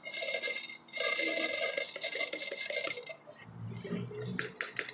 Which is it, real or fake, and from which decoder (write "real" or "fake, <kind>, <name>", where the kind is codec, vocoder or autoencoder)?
real